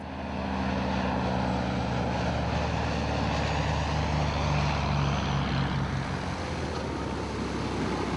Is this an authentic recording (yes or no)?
yes